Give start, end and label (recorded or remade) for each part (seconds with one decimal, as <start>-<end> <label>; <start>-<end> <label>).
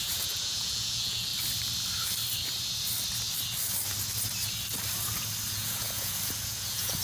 0.0-1.3 remade; 1.3-5.5 recorded; 5.5-7.0 remade